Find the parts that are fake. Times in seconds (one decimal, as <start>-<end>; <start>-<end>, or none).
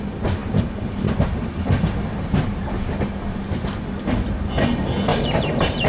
0.4-3.8; 5.1-5.9